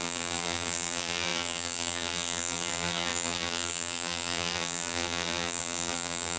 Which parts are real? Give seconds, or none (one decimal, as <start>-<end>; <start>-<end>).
none